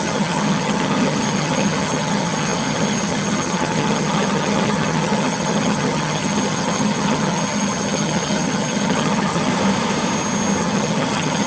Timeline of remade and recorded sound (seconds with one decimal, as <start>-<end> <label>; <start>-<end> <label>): 0.0-9.5 remade; 9.5-10.6 recorded; 10.6-11.5 remade